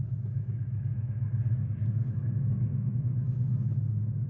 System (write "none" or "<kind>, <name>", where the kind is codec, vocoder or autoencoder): autoencoder, DAC-VAE